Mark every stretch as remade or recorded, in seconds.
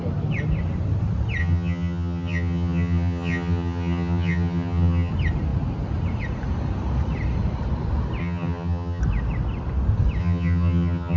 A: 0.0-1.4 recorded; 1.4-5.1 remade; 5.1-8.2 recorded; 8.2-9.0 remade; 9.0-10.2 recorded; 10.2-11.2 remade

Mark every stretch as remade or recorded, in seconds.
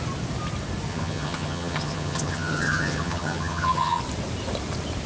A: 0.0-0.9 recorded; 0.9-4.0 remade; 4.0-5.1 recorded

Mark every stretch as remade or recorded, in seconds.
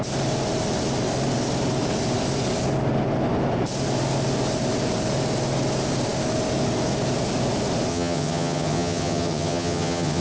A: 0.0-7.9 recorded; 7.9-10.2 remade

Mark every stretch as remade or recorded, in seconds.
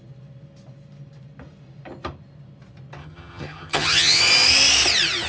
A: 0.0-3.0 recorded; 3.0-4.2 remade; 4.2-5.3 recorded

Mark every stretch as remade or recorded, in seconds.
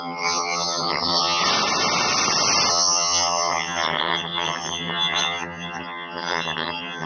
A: 0.0-1.4 remade; 1.4-2.7 recorded; 2.7-7.1 remade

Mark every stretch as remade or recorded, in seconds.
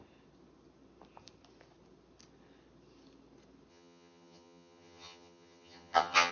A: 0.0-3.7 recorded; 3.7-6.3 remade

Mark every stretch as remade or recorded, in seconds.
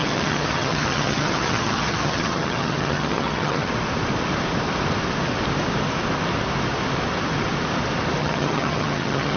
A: 0.0-3.7 remade; 3.7-8.2 recorded; 8.2-9.4 remade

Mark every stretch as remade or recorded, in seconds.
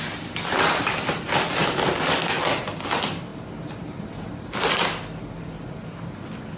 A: 0.0-6.6 recorded